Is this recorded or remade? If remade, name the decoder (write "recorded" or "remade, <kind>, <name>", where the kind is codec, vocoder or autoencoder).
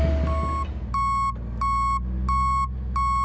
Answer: recorded